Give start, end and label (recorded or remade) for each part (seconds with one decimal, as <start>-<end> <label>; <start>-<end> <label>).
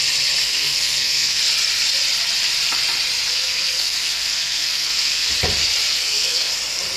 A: 0.0-0.4 recorded; 0.4-1.4 remade; 1.4-3.3 recorded; 3.3-5.3 remade; 5.3-5.9 recorded; 5.9-6.5 remade; 6.5-7.0 recorded